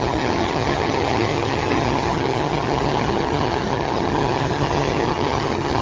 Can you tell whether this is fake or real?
fake